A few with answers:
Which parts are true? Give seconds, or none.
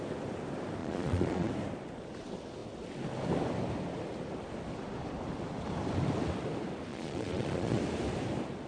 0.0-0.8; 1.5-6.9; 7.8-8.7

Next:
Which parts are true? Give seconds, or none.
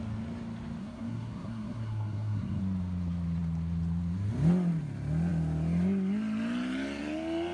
0.0-0.8; 2.6-7.5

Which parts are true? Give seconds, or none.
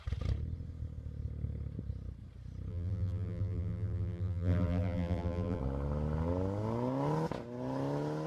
0.0-2.7; 5.6-8.3